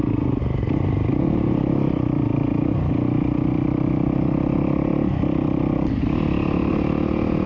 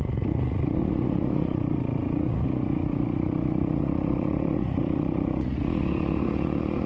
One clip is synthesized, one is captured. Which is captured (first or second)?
first